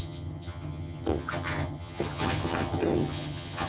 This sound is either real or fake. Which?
fake